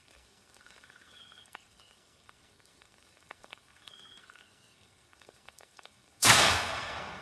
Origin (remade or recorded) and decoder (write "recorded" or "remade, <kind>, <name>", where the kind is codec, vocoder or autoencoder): remade, codec, SNAC